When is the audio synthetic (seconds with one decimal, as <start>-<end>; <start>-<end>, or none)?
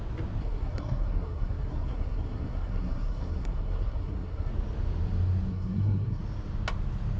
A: 0.4-4.5; 5.5-6.2